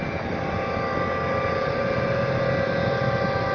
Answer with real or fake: real